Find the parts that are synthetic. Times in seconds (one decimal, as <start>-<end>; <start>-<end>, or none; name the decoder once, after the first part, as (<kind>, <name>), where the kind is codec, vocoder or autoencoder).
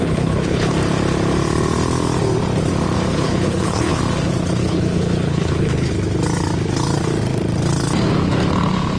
0.0-0.7 (codec, HILCodec); 3.1-4.0; 4.6-5.9